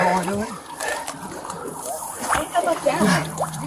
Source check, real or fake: fake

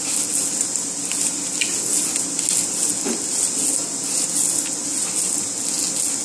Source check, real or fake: real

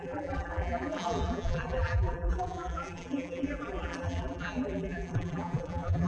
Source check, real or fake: fake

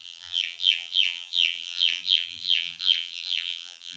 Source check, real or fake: fake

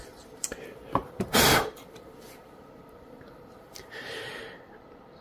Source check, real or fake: fake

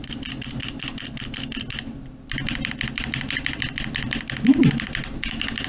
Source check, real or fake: fake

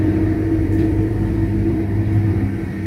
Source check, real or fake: fake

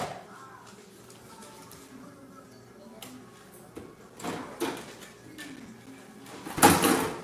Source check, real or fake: real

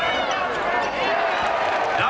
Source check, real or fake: real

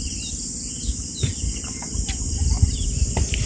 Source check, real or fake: real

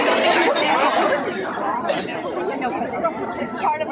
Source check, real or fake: fake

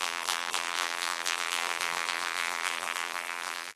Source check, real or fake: fake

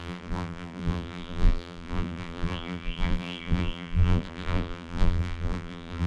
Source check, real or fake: fake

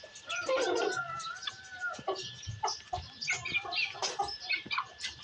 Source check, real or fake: fake